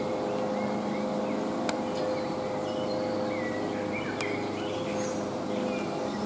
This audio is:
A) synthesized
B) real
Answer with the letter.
B